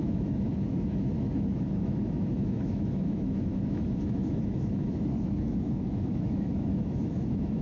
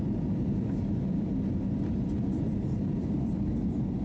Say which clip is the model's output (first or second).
first